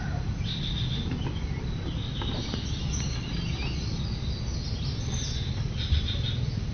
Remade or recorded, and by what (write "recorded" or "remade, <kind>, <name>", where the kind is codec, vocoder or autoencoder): recorded